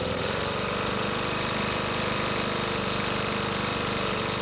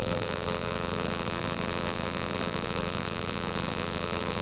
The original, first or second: first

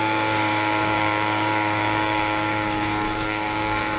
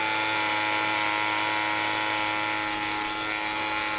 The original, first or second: second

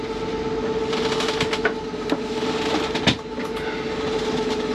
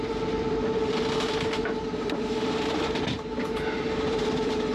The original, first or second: first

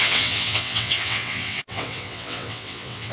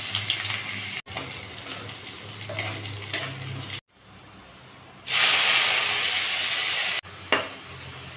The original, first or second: second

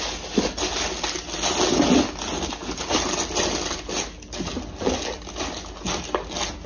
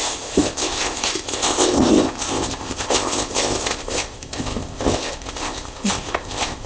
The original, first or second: first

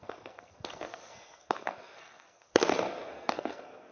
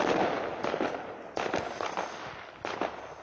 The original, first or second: second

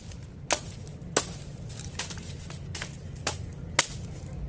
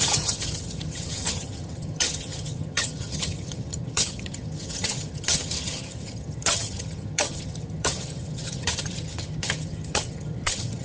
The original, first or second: first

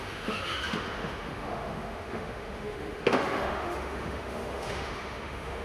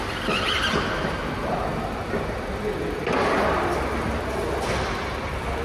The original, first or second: second